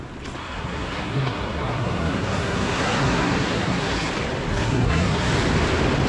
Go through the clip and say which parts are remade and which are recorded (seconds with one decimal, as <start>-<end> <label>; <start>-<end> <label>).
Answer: 0.0-0.4 recorded; 0.4-4.1 remade; 4.1-4.5 recorded; 4.5-5.3 remade; 5.3-6.1 recorded